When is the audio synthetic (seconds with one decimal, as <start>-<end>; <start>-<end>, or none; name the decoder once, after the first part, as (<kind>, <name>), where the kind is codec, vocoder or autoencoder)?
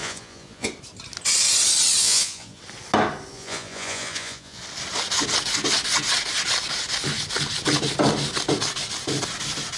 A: 0.0-0.7 (vocoder, Vocos); 2.0-2.6; 3.3-4.6